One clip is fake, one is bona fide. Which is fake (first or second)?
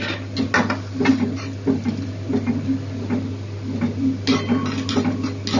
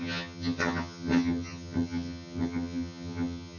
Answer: second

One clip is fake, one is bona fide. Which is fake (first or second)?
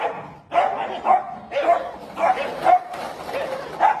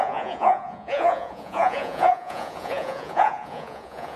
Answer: second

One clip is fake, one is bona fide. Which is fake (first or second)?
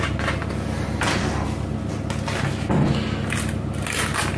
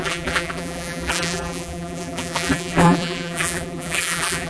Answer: second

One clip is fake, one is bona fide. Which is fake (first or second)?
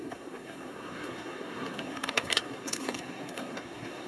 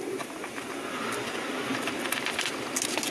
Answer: first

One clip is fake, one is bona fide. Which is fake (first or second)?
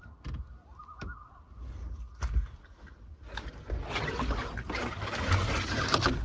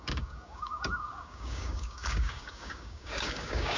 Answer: second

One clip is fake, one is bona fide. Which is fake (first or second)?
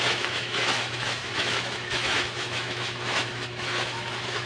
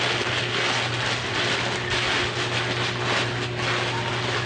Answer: first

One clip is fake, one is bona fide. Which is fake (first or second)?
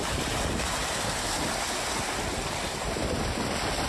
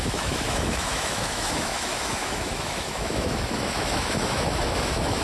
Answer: second